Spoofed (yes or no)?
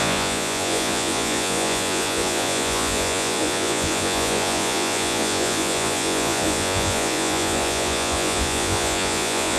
yes